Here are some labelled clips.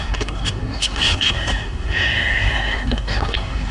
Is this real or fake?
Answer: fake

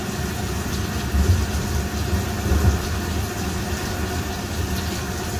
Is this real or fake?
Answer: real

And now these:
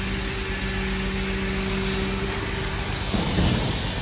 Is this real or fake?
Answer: real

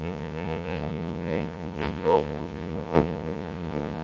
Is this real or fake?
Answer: fake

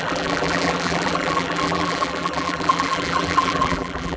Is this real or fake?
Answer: fake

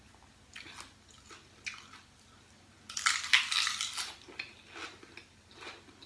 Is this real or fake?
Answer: real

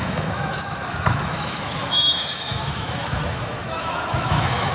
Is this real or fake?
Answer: fake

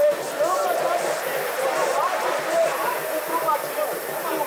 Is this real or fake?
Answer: fake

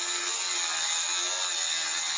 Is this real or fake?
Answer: real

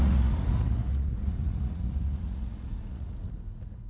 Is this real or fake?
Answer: fake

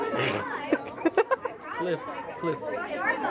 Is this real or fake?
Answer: real